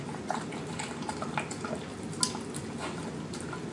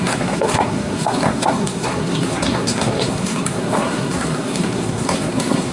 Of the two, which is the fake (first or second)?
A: second